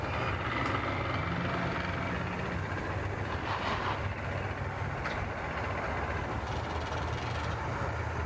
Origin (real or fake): real